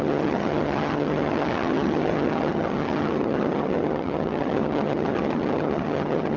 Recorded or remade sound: remade